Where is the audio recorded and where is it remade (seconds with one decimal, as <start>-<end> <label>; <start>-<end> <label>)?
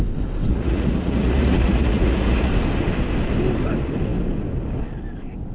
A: 0.0-0.5 recorded; 0.5-2.5 remade; 2.5-5.5 recorded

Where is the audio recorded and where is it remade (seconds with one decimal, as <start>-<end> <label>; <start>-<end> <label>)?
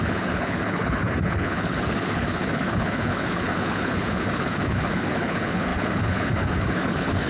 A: 0.0-7.3 remade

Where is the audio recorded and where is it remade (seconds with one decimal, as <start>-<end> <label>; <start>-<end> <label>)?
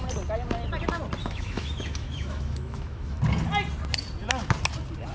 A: 0.0-1.2 recorded; 1.2-3.2 remade; 3.2-5.1 recorded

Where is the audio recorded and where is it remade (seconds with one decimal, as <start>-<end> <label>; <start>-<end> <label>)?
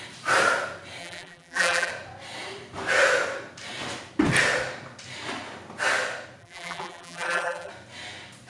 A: 0.0-1.0 recorded; 1.0-1.9 remade; 1.9-6.4 recorded; 6.4-7.7 remade; 7.7-8.5 recorded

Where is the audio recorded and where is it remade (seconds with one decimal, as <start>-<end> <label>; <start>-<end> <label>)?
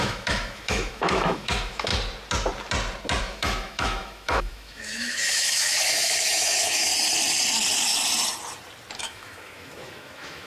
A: 0.0-1.9 remade; 1.9-3.2 recorded; 3.2-6.9 remade; 6.9-9.0 recorded; 9.0-10.5 remade